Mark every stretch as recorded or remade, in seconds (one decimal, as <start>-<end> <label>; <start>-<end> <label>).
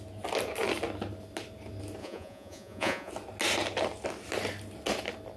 0.0-2.0 recorded; 2.0-3.1 remade; 3.1-5.4 recorded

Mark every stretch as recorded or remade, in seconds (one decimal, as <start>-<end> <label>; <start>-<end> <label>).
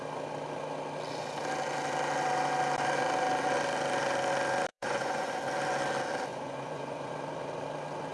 0.0-4.7 recorded; 4.7-5.3 remade; 5.3-6.3 recorded; 6.3-7.1 remade; 7.1-8.1 recorded